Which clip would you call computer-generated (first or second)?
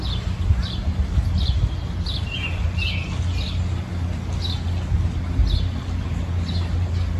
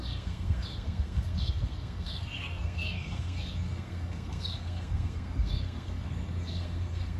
second